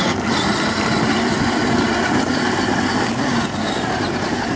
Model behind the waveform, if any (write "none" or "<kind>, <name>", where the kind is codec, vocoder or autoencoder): none